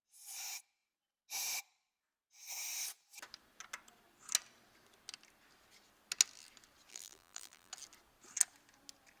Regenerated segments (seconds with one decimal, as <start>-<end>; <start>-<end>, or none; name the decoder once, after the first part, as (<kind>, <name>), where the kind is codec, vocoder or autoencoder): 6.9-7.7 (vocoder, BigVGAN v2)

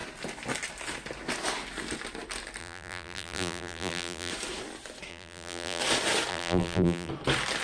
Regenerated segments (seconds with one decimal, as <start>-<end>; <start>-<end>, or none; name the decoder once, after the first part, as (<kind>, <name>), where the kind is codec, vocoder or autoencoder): 2.6-4.3 (vocoder, BigVGAN v2); 5.1-5.8; 6.3-7.1

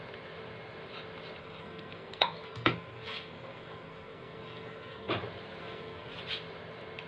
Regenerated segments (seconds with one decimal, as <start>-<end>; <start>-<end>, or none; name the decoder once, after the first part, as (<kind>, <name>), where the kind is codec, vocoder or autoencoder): 1.4-5.1 (codec, SNAC); 5.6-6.2

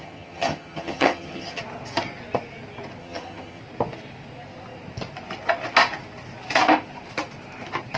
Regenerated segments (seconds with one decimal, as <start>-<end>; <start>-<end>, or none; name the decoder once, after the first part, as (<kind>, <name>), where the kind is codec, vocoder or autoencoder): 0.0-1.6 (vocoder, HiFi-GAN); 3.0-3.6